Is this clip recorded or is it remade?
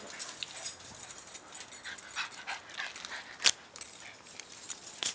recorded